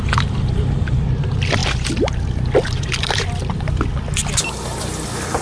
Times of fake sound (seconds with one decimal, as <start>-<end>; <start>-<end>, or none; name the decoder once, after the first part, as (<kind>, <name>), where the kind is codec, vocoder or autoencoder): none